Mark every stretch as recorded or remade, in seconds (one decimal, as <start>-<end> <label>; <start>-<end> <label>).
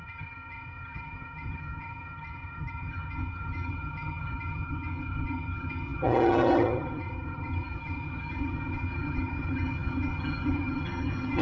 0.0-11.4 remade